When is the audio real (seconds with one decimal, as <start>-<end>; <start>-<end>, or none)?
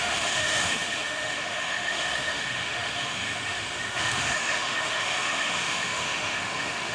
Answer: none